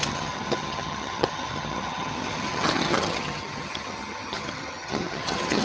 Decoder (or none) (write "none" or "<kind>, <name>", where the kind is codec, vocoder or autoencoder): vocoder, HiFi-GAN